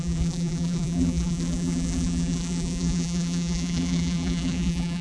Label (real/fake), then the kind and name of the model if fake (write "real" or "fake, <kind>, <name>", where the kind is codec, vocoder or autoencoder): fake, vocoder, BigVGAN v2